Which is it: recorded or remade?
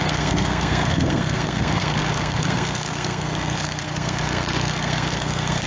remade